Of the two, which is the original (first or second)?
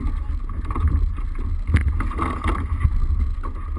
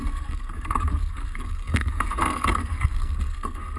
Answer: first